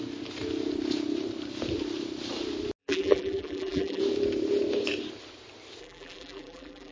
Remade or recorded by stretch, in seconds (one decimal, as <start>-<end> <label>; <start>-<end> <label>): 0.0-2.8 recorded; 2.8-4.0 remade; 4.0-5.8 recorded; 5.8-6.9 remade